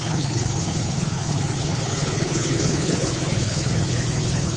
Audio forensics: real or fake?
fake